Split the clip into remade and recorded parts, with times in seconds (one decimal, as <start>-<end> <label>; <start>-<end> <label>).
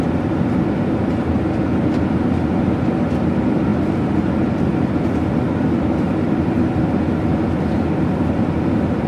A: 0.0-9.1 recorded